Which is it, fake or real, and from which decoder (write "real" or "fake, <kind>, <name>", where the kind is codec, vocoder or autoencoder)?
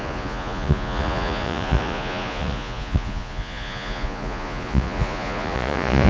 fake, vocoder, Vocos